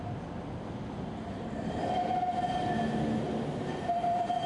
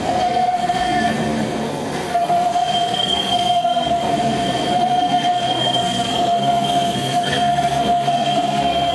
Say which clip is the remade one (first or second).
second